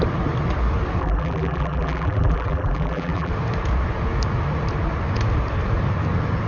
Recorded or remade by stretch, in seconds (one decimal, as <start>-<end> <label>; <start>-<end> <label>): 0.0-1.0 recorded; 1.0-3.3 remade; 3.3-6.5 recorded